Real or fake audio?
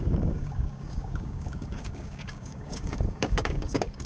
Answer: fake